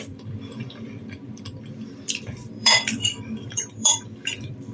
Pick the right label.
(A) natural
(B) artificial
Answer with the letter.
B